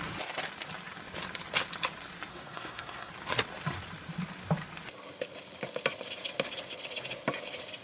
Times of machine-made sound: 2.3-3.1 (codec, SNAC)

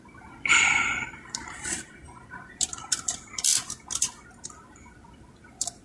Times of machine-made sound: 0.0-2.0 (vocoder, BigVGAN v2); 3.1-3.5; 4.5-5.8

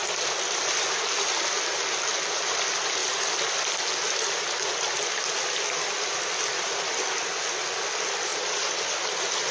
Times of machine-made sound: none

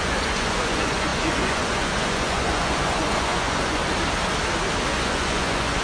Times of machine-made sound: 0.0-3.8 (vocoder, Vocos); 4.9-5.8